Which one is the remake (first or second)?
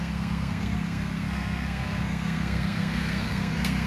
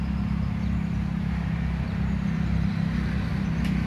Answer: first